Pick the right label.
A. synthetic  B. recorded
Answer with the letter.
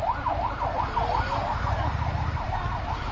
B